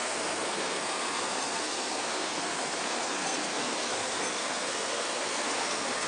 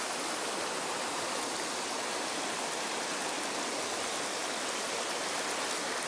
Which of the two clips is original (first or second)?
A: second